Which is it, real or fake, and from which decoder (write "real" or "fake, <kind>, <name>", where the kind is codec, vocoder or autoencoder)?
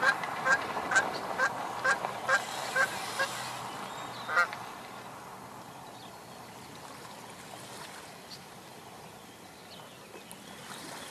real